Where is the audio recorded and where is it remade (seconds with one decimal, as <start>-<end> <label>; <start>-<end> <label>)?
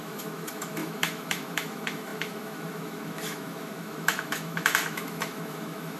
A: 0.0-6.0 remade